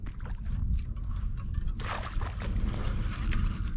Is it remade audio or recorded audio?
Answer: recorded